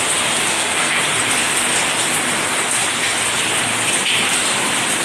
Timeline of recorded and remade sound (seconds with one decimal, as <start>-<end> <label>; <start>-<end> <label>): 0.0-0.5 recorded; 0.5-1.0 remade; 1.0-5.0 recorded